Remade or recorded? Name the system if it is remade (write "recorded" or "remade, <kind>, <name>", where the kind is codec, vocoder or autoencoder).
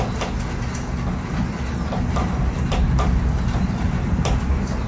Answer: recorded